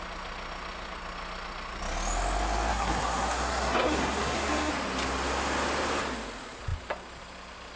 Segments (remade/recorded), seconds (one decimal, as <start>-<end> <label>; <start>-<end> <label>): 0.0-2.7 recorded; 2.7-4.7 remade; 4.7-7.8 recorded

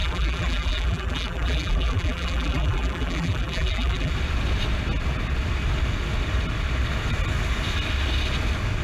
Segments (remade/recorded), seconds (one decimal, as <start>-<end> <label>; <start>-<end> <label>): 0.0-4.1 remade; 4.1-8.8 recorded

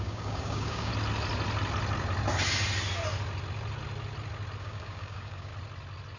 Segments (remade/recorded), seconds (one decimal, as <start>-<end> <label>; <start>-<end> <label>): 0.0-0.9 remade; 0.9-4.6 recorded; 4.6-5.5 remade; 5.5-6.2 recorded

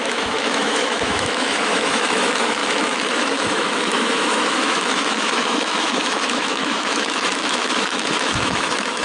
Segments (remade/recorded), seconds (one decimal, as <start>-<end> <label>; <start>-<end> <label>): 0.0-9.0 remade

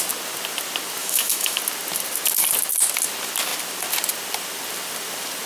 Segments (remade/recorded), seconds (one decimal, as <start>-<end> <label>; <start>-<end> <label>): 0.0-1.0 recorded; 1.0-1.6 remade; 1.6-5.5 recorded